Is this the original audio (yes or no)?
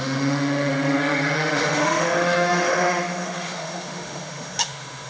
no